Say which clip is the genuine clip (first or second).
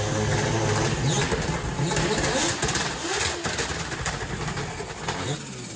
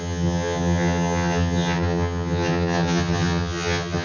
first